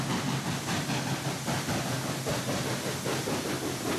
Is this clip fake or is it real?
real